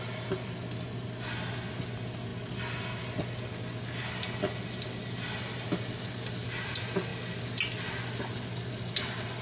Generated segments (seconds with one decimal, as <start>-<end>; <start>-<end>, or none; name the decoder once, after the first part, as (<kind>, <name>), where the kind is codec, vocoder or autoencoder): none